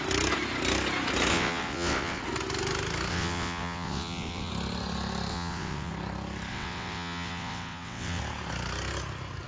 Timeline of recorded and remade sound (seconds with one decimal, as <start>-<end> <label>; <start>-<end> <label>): 0.0-1.3 recorded; 1.3-2.2 remade; 2.2-3.1 recorded; 3.1-4.5 remade; 4.5-5.3 recorded; 5.3-5.9 remade; 5.9-6.5 recorded; 6.5-8.2 remade; 8.2-9.5 recorded